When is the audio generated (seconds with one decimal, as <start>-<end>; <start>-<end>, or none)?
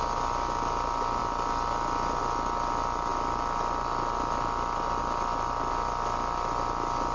none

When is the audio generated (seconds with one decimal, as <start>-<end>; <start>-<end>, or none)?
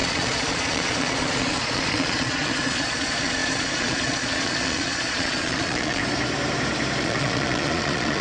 0.0-6.0; 7.0-8.2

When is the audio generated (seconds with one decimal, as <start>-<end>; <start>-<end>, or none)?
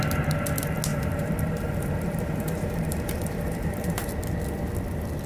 0.9-4.1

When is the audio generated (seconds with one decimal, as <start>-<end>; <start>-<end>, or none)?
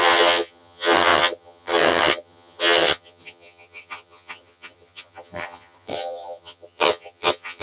0.0-7.6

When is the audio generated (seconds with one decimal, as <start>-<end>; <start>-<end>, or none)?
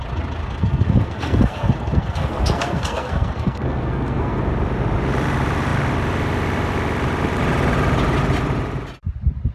0.4-4.4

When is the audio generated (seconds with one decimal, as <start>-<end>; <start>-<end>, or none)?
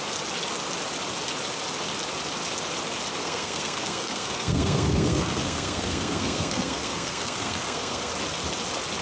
3.2-8.1